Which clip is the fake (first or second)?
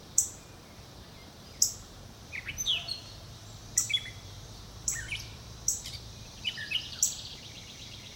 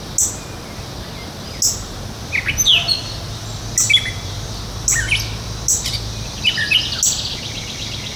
first